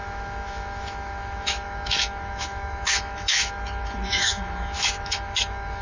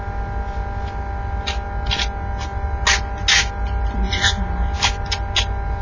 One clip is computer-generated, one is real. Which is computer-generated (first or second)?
first